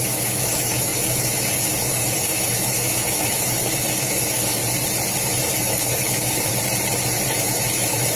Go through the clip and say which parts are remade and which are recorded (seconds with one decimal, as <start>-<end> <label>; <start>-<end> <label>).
0.0-4.6 remade; 4.6-5.2 recorded; 5.2-6.5 remade; 6.5-7.3 recorded; 7.3-8.2 remade